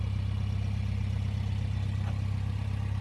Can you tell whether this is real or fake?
real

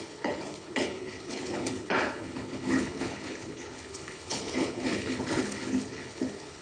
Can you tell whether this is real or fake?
fake